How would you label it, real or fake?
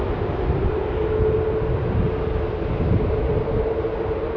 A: real